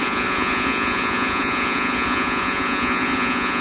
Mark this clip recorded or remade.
remade